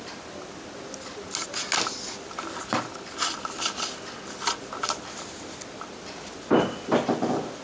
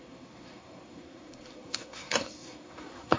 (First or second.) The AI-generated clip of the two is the second